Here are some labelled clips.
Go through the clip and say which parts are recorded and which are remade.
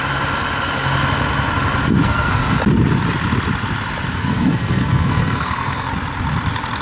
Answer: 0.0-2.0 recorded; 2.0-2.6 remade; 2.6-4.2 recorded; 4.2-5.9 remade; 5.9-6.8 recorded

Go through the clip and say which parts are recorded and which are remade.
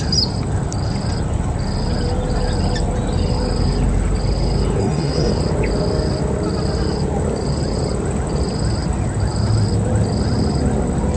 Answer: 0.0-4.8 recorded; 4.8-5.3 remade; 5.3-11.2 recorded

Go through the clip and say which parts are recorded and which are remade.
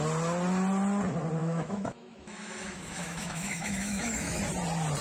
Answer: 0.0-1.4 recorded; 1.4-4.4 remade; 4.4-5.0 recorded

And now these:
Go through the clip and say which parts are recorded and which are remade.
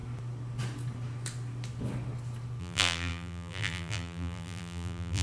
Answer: 0.0-2.6 recorded; 2.6-5.2 remade